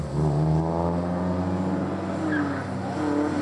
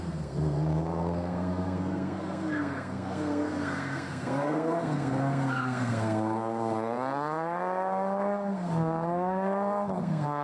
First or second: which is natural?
first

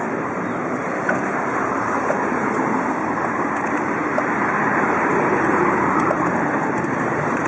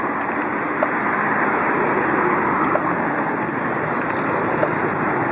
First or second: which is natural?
second